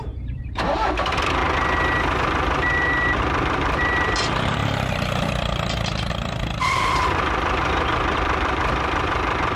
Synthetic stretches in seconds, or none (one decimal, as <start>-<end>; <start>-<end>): 0.0-1.4; 2.2-4.6; 6.6-9.6